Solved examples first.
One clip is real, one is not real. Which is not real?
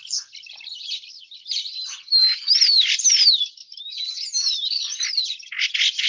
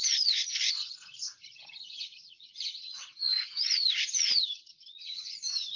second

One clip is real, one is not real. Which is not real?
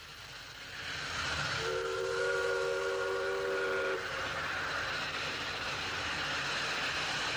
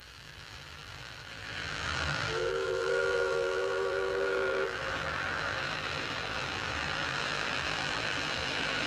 second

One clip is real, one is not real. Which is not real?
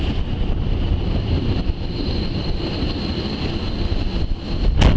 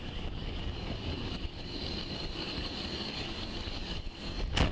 second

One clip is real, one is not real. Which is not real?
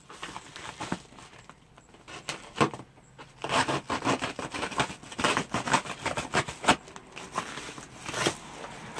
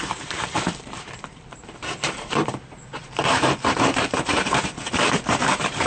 second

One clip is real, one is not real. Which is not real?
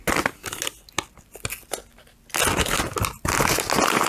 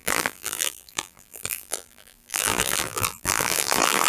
second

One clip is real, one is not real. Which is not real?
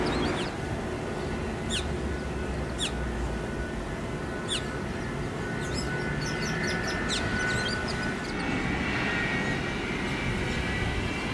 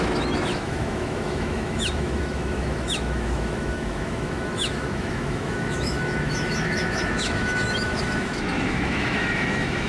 second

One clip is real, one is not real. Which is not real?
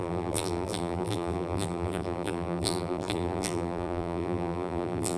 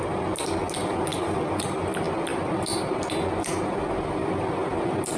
first